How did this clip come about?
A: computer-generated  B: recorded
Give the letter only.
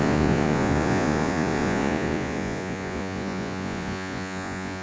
A